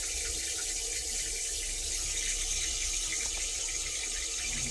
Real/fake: real